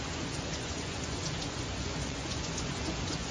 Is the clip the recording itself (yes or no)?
no